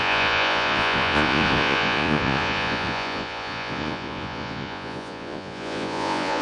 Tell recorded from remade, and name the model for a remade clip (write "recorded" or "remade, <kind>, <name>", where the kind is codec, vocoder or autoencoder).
remade, vocoder, Vocos